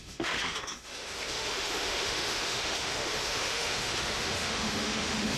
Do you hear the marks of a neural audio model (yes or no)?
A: yes